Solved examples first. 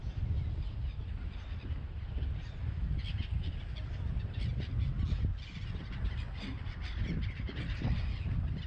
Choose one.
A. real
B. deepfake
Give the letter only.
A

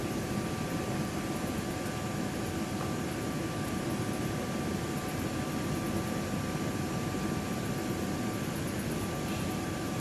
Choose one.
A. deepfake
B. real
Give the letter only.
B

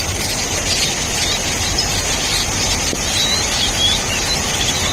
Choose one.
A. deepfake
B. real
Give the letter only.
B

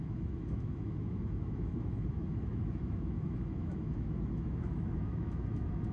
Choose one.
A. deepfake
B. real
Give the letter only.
A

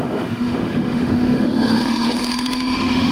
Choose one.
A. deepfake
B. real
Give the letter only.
A